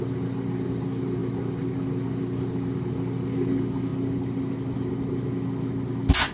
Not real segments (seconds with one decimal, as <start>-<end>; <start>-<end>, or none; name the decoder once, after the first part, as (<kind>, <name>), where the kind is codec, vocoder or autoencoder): none